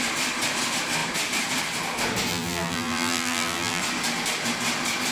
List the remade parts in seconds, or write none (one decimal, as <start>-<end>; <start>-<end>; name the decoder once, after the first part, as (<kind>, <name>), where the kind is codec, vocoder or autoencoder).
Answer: 2.3-3.8 (vocoder, BigVGAN v2)